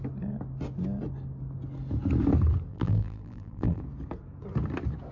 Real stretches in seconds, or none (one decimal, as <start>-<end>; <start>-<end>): 0.0-2.7; 3.8-5.1